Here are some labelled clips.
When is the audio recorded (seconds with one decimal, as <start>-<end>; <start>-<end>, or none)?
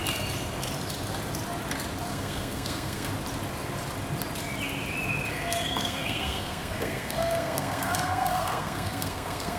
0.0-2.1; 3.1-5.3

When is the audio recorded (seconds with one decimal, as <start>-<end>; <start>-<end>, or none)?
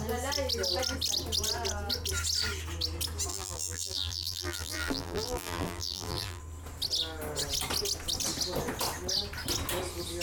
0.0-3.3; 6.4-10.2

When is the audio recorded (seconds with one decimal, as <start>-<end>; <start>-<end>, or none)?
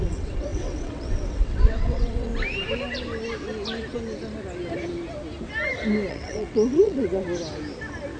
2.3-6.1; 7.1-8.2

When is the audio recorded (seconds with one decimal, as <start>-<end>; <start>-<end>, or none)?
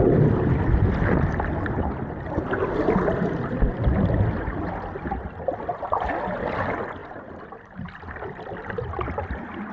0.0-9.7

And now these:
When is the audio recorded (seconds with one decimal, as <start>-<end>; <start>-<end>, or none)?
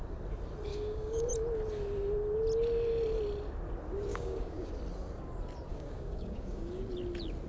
0.0-0.7; 1.3-4.1; 4.7-5.7; 6.8-7.5